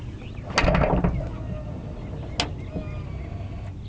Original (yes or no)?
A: yes